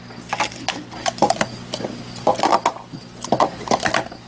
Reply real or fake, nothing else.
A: real